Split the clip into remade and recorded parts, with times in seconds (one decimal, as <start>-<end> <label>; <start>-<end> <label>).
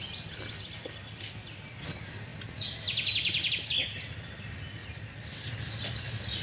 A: 0.0-6.4 recorded